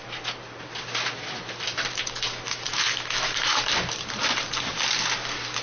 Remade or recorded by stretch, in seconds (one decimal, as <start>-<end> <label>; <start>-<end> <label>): 0.0-2.3 recorded; 2.3-3.6 remade; 3.6-5.6 recorded

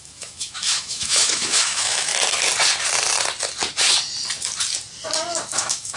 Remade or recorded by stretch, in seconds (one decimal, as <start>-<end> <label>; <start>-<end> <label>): 0.0-2.1 remade; 2.1-5.5 recorded; 5.5-6.0 remade

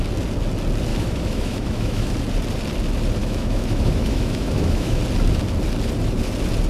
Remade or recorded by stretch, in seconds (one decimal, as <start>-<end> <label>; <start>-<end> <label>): 0.0-0.9 recorded; 0.9-2.1 remade; 2.1-3.2 recorded; 3.2-5.0 remade; 5.0-6.7 recorded

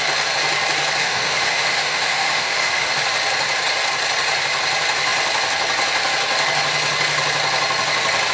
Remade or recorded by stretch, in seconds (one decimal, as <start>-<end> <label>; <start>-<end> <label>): 0.0-1.0 recorded; 1.0-2.9 remade; 2.9-8.3 recorded